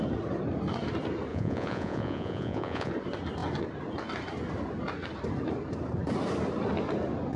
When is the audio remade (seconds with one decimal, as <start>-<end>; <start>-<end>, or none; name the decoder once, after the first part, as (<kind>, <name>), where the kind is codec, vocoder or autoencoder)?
1.3-2.9 (vocoder, Vocos)